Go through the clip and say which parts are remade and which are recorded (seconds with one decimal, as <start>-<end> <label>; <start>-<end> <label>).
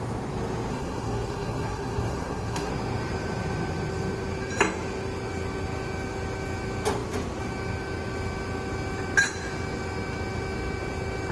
0.0-0.7 recorded; 0.7-2.7 remade; 2.7-11.3 recorded